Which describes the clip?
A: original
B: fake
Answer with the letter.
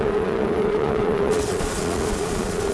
B